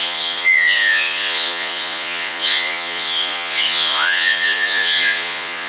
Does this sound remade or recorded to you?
remade